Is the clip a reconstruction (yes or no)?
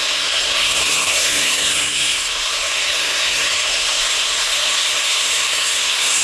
yes